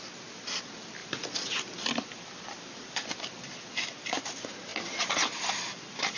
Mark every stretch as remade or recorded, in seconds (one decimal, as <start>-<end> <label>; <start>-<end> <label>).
0.0-1.0 recorded; 1.0-4.2 remade; 4.2-4.7 recorded; 4.7-6.2 remade